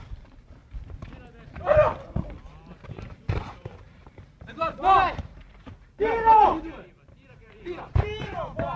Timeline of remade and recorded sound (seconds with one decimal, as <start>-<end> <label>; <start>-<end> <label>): 0.0-0.6 remade; 0.6-2.9 recorded; 2.9-8.8 remade